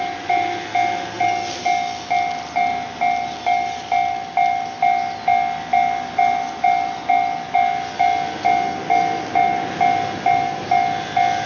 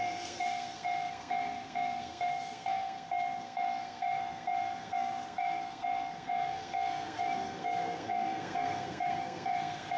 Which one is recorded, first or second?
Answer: first